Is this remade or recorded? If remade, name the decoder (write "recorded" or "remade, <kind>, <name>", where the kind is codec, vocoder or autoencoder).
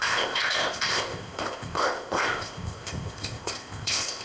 remade, codec, ZipCodec